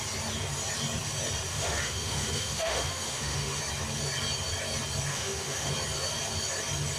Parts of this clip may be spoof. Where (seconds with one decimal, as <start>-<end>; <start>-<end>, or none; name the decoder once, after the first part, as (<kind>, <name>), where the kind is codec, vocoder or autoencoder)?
1.5-3.6 (autoencoder, DAC-VAE); 5.1-5.7

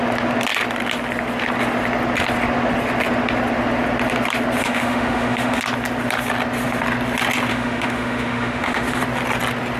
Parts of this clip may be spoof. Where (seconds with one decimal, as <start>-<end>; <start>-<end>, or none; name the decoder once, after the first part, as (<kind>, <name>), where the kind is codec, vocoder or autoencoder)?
4.6-5.6 (autoencoder, DAC-VAE); 7.5-9.0